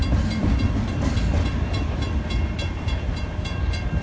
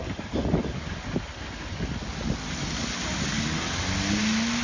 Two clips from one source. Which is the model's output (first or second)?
first